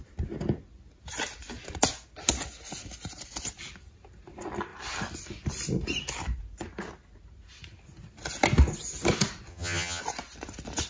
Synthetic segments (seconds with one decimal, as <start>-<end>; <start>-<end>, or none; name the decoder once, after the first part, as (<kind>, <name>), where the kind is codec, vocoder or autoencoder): 9.5-10.0 (vocoder, HiFi-GAN)